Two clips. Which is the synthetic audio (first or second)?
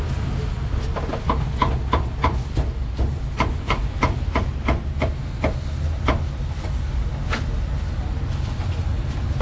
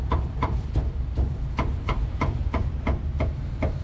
second